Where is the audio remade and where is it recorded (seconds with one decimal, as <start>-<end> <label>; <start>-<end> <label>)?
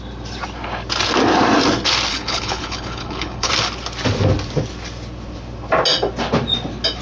0.0-2.1 recorded; 2.1-3.5 remade; 3.5-7.0 recorded